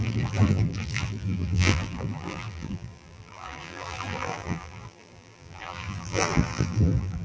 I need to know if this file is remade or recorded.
remade